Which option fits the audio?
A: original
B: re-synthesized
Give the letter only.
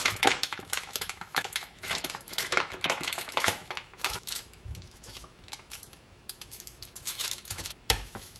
B